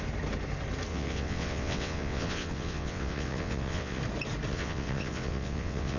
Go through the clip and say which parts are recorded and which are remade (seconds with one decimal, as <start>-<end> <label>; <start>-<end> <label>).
0.0-0.9 recorded; 0.9-4.0 remade; 4.0-4.5 recorded; 4.5-6.0 remade